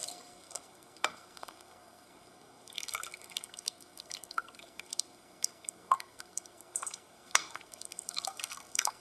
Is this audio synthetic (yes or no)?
yes